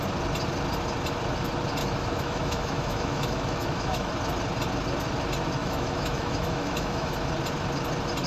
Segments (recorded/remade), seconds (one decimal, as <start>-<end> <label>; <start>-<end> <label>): 0.0-1.8 recorded; 1.8-4.1 remade; 4.1-5.6 recorded; 5.6-7.1 remade; 7.1-8.3 recorded